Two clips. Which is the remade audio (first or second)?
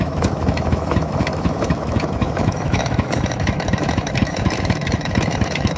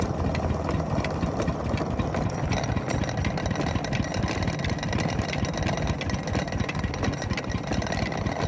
first